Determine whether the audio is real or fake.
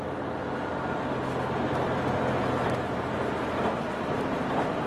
real